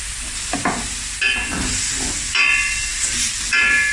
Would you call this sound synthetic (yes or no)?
no